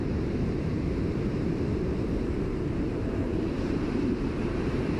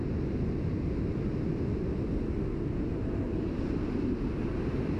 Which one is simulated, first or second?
first